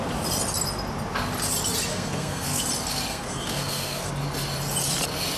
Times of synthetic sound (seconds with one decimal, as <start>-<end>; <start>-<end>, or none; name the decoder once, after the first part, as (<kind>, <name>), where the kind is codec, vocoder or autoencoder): 1.9-2.6 (codec, SNAC); 3.1-4.1